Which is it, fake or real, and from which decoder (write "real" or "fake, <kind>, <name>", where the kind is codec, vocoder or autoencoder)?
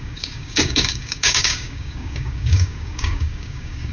fake, codec, DAC